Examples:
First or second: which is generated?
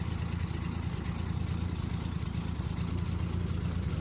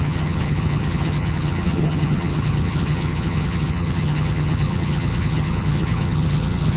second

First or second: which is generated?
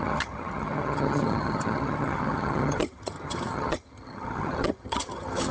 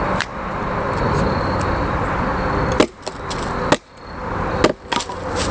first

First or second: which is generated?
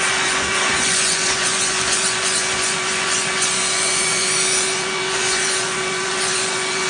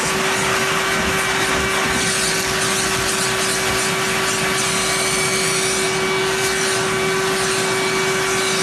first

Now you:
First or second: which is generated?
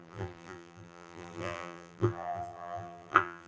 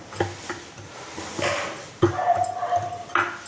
first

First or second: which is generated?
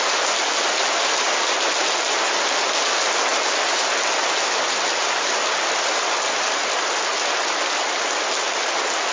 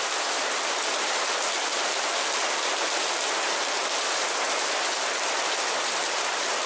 second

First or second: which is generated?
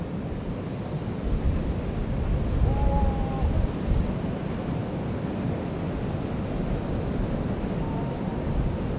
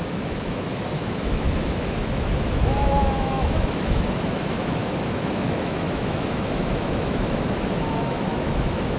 second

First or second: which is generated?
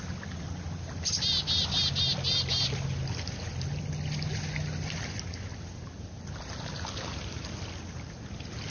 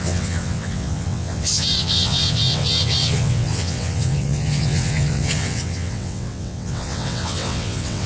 second